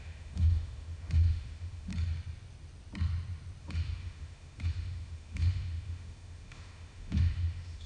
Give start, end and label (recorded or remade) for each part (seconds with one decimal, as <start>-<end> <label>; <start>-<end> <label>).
0.0-1.9 remade; 1.9-3.6 recorded; 3.6-7.9 remade